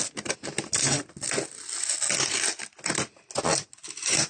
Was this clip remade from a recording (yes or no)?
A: no